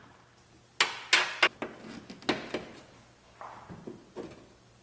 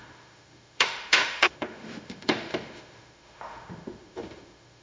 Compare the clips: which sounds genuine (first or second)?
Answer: first